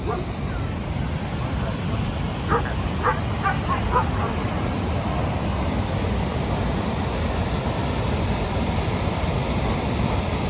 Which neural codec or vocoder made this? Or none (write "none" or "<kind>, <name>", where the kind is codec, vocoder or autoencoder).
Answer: none